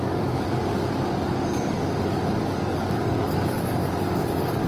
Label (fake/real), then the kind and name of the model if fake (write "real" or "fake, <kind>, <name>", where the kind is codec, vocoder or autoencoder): fake, codec, DAC